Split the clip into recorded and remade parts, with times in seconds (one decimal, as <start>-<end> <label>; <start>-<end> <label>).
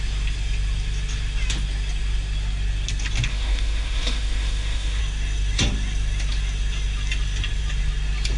0.0-3.3 recorded; 3.3-5.0 remade; 5.0-8.4 recorded